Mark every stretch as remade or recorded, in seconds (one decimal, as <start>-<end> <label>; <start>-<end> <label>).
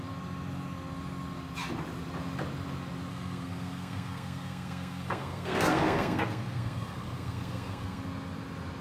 0.0-3.1 recorded; 3.1-8.0 remade; 8.0-8.8 recorded